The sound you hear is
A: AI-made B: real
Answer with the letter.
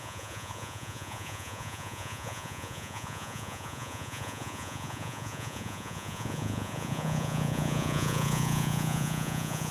A